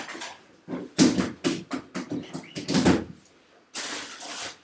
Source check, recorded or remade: recorded